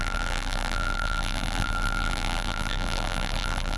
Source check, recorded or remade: remade